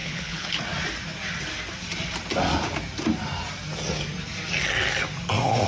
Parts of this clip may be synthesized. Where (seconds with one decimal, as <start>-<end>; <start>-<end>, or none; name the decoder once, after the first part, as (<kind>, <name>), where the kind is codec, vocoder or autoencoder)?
0.0-0.6 (codec, HILCodec)